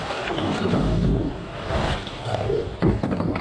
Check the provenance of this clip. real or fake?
fake